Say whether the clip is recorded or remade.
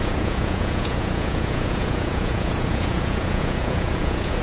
remade